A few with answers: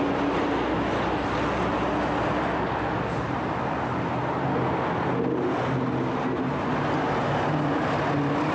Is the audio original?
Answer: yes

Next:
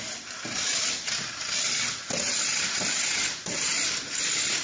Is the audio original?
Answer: yes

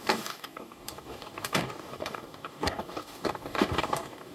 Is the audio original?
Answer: no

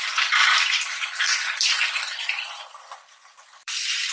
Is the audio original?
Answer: no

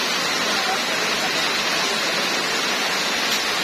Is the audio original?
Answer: yes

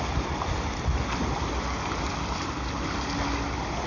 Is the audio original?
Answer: yes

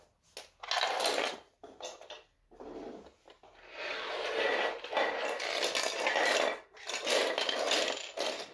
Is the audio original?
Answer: yes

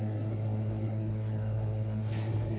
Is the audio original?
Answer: no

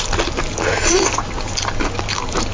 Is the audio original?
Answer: yes